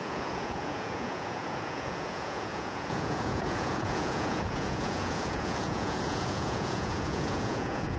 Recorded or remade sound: remade